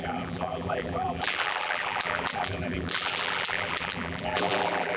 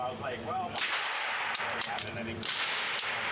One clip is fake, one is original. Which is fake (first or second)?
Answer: first